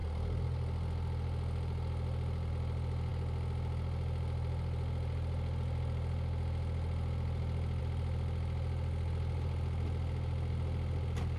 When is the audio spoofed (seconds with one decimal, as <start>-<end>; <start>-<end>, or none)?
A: none